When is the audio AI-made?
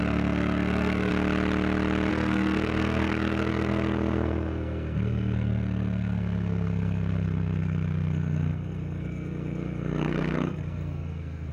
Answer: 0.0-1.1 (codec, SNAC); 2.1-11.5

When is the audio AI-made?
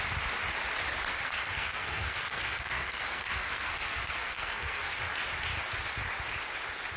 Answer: 1.1-5.0 (codec, SNAC)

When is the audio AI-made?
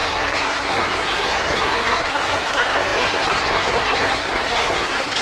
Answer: 0.0-5.2 (codec, SNAC)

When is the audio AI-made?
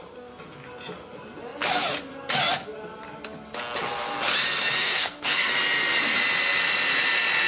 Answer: 4.8-5.5 (codec, SNAC)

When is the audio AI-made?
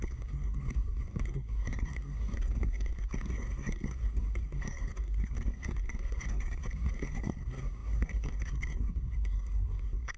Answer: 0.0-10.2 (codec, SNAC)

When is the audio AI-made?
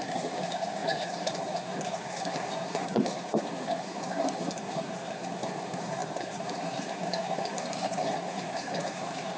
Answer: 0.0-9.4 (codec, SNAC)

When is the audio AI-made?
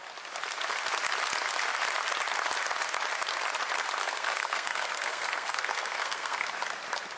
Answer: 4.0-6.5 (codec, SNAC)